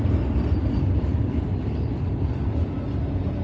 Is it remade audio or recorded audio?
recorded